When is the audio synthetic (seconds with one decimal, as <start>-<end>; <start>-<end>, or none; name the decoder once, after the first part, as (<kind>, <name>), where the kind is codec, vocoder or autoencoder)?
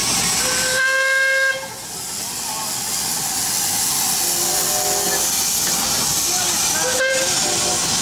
none